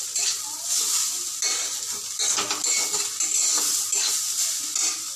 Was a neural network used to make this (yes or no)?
no